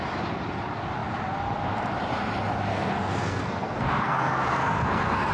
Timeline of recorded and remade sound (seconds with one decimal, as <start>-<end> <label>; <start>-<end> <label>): 0.0-2.7 recorded; 2.7-5.3 remade